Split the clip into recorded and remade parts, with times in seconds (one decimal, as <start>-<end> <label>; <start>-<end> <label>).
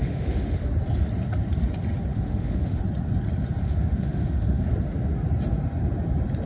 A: 0.0-0.7 remade; 0.7-2.1 recorded; 2.1-2.8 remade; 2.8-3.6 recorded; 3.6-4.6 remade; 4.6-6.5 recorded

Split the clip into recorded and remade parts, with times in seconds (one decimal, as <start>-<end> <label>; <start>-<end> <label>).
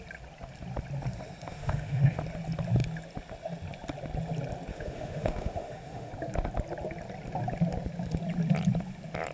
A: 0.0-1.5 recorded; 1.5-2.2 remade; 2.2-4.7 recorded; 4.7-6.1 remade; 6.1-9.3 recorded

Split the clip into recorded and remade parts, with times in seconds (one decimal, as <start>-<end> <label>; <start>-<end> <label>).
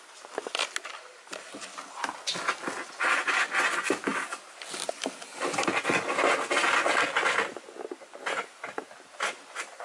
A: 0.0-9.8 recorded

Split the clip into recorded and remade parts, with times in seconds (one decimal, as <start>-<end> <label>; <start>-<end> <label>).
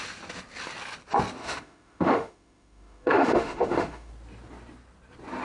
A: 0.0-1.4 recorded; 1.4-4.1 remade; 4.1-5.4 recorded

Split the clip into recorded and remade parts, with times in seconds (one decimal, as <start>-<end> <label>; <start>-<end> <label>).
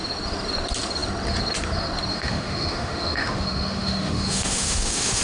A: 0.0-2.1 recorded; 2.1-5.2 remade